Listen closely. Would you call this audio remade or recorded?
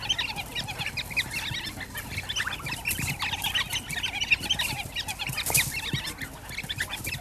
recorded